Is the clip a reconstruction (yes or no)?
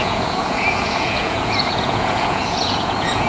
yes